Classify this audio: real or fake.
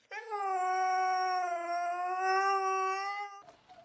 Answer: real